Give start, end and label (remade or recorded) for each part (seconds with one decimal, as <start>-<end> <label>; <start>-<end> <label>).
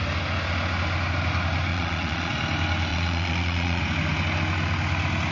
0.0-1.7 recorded; 1.7-2.3 remade; 2.3-2.9 recorded; 2.9-3.8 remade; 3.8-5.3 recorded